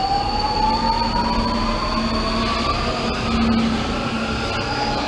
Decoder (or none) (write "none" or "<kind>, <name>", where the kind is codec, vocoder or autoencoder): none